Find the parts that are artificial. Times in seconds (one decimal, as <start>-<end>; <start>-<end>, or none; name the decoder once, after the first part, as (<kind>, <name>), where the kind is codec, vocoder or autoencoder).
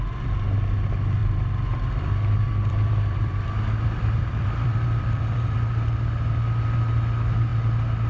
1.2-5.7 (vocoder, BigVGAN v2)